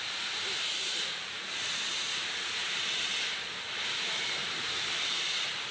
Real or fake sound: fake